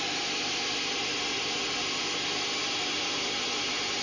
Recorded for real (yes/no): yes